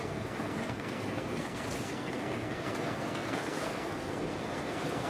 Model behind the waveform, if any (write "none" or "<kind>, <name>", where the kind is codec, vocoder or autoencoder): codec, SNAC